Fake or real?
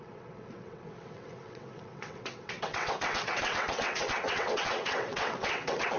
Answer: fake